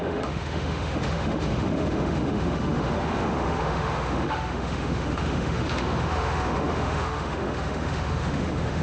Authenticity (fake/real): fake